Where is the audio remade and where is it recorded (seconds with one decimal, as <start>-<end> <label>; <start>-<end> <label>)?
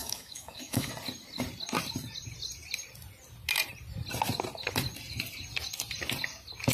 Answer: 0.0-0.9 remade; 0.9-6.7 recorded